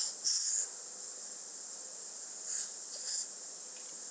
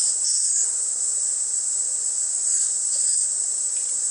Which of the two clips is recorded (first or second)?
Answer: first